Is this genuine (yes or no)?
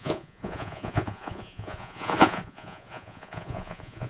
no